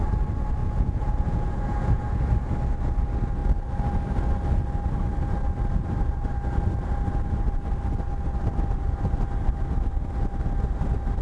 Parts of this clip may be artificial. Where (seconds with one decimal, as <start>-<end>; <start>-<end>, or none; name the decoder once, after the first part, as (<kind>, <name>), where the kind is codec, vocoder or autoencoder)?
0.6-2.3 (vocoder, Vocos)